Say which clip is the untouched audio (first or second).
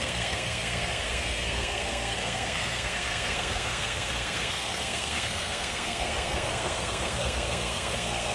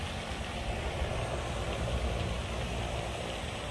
second